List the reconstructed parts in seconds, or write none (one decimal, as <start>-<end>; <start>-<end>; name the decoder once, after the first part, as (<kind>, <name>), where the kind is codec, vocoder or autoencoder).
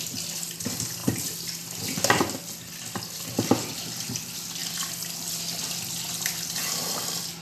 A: none